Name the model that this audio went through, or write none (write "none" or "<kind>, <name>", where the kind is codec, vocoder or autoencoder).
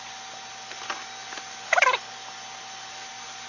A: none